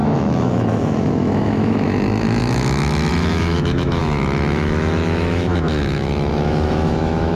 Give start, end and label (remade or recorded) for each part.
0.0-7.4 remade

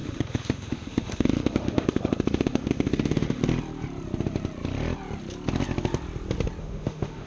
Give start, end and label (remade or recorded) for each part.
0.0-3.4 remade; 3.4-6.6 recorded; 6.6-7.3 remade

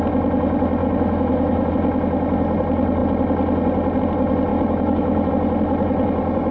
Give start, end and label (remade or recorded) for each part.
0.0-0.8 recorded; 0.8-1.7 remade; 1.7-4.5 recorded; 4.5-5.3 remade; 5.3-6.5 recorded